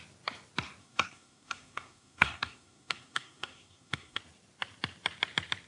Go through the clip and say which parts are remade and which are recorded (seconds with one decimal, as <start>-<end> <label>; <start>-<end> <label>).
0.0-0.8 recorded; 0.8-4.2 remade; 4.2-5.7 recorded